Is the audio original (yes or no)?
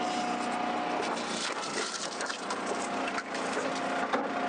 yes